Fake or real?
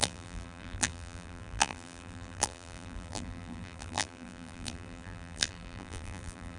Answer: fake